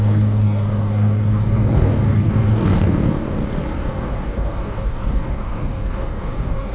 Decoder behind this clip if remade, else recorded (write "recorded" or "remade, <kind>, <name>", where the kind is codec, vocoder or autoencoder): remade, codec, DAC